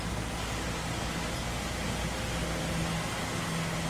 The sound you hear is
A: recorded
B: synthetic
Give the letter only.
A